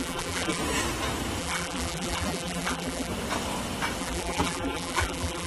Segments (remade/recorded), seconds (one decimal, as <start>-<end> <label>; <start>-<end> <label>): 0.0-0.6 remade; 0.6-1.4 recorded; 1.4-3.1 remade; 3.1-4.0 recorded; 4.0-5.5 remade